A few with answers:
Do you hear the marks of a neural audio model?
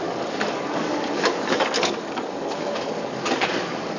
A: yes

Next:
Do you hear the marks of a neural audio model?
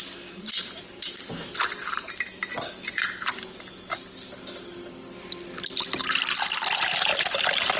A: no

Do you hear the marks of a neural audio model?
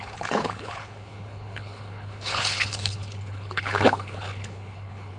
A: yes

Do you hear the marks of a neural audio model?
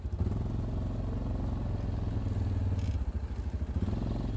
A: no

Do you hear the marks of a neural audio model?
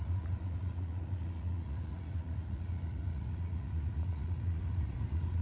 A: yes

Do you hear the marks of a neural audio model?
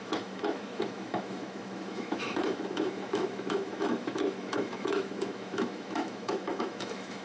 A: yes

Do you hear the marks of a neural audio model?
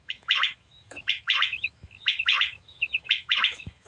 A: yes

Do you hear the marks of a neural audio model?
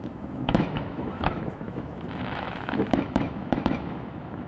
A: yes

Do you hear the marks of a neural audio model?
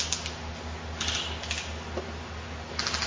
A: no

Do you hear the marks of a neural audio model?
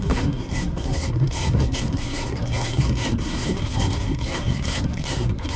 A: yes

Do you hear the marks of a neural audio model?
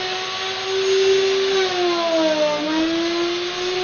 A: no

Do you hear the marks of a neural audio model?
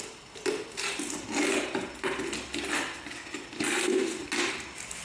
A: no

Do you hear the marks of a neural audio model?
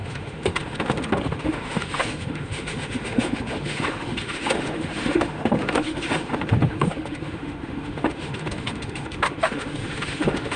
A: yes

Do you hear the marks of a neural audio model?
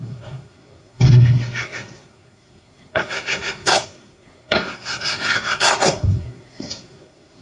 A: yes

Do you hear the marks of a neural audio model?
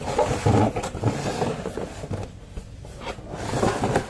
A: no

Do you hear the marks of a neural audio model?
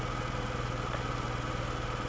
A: yes